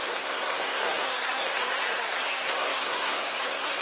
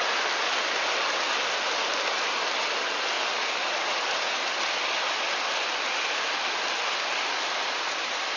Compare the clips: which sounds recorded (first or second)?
second